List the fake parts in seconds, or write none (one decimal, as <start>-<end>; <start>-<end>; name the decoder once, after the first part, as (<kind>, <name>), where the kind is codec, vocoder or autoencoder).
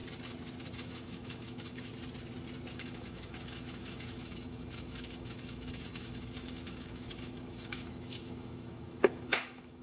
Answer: 0.7-1.9 (autoencoder, DAC-VAE); 2.7-9.8